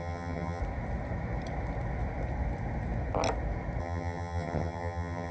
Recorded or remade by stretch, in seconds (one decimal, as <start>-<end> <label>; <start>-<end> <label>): 0.0-0.6 remade; 0.6-3.8 recorded; 3.8-5.3 remade